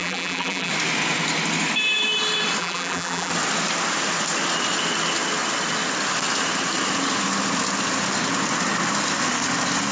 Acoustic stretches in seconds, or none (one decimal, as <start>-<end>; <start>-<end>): 0.7-2.6; 3.3-9.9